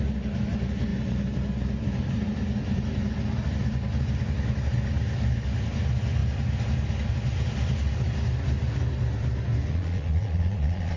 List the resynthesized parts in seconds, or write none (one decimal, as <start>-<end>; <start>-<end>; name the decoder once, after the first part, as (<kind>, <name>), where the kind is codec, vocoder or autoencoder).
9.7-11.0 (vocoder, Vocos)